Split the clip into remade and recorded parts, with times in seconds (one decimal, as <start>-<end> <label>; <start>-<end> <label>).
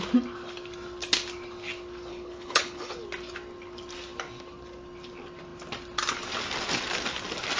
0.0-2.1 recorded; 2.1-2.9 remade; 2.9-7.6 recorded